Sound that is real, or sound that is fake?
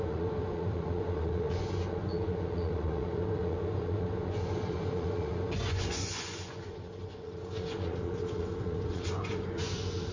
fake